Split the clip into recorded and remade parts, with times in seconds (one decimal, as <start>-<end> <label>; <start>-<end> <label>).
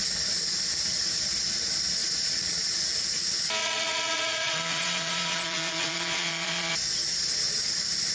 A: 0.0-2.0 recorded; 2.0-2.7 remade; 2.7-3.6 recorded; 3.6-6.7 remade; 6.7-8.1 recorded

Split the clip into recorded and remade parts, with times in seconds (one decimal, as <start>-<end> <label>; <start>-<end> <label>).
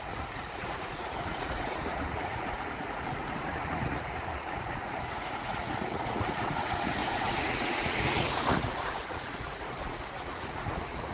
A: 0.0-11.1 remade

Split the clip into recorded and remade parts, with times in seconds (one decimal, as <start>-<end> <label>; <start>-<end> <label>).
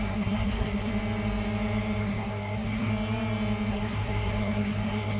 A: 0.0-0.9 remade; 0.9-2.0 recorded; 2.0-2.9 remade; 2.9-3.7 recorded; 3.7-5.2 remade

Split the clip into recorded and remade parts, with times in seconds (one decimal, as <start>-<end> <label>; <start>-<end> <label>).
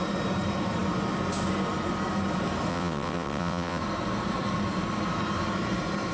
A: 0.0-2.7 recorded; 2.7-3.8 remade; 3.8-6.1 recorded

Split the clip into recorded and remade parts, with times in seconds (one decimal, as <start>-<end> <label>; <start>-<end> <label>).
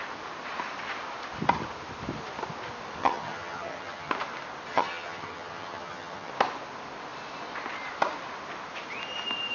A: 0.0-3.0 recorded; 3.0-4.1 remade; 4.1-4.7 recorded; 4.7-6.3 remade; 6.3-9.5 recorded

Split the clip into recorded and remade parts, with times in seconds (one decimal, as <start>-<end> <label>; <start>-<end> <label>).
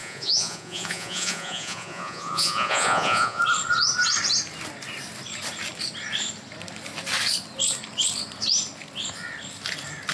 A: 0.0-3.4 remade; 3.4-10.1 recorded